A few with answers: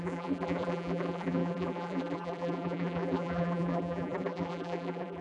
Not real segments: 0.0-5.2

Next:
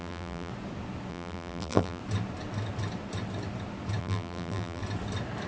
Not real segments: 0.0-0.5; 1.1-2.0; 4.0-4.8